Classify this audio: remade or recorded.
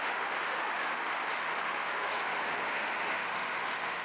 remade